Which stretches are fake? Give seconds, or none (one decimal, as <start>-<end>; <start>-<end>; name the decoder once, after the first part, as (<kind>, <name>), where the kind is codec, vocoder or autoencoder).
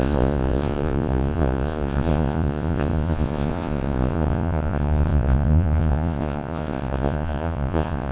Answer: 0.0-8.1 (vocoder, Vocos)